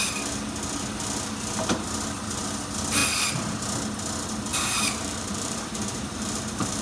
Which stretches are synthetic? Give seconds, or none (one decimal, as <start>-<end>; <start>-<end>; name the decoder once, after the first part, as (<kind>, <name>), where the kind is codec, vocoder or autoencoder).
4.5-6.8 (vocoder, BigVGAN v2)